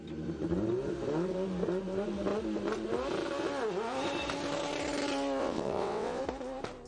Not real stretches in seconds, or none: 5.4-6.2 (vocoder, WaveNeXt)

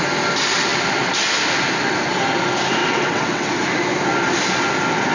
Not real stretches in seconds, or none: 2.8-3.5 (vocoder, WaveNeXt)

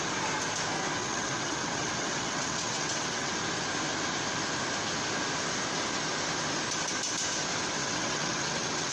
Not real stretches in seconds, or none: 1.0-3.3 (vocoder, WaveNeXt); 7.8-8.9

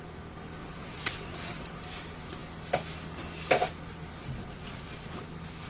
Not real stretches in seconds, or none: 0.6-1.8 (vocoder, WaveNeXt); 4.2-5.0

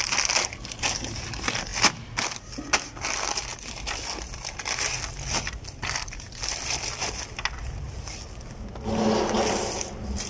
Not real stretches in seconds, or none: none

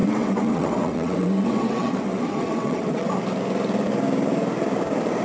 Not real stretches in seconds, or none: 0.0-3.1 (vocoder, WaveNeXt)

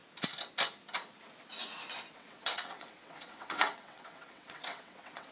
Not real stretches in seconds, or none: 2.2-5.3 (vocoder, WaveNeXt)

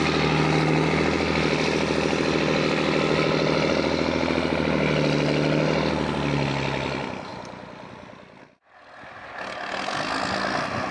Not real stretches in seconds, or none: none